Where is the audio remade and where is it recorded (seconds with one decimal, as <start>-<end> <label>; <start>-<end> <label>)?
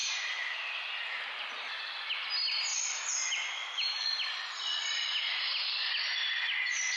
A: 0.0-2.7 recorded; 2.7-5.2 remade; 5.2-7.0 recorded